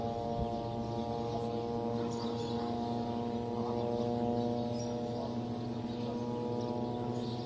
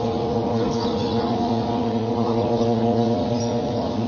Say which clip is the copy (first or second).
second